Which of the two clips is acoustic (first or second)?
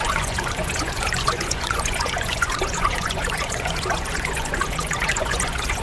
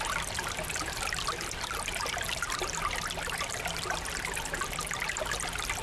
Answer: second